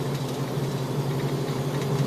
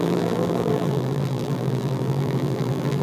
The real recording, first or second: first